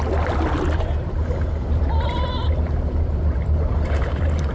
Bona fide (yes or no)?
yes